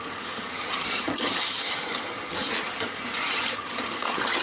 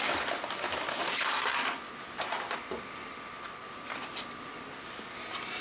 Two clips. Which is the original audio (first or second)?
second